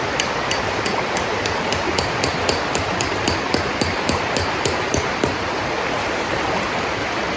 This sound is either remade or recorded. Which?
recorded